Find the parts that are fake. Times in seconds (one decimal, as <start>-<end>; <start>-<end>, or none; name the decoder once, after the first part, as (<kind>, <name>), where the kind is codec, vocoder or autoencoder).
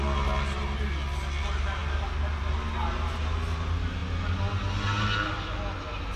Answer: none